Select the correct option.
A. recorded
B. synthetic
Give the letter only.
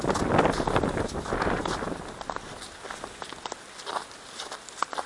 A